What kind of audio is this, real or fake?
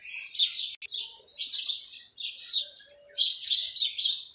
real